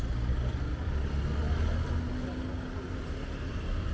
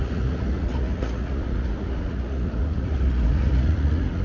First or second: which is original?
first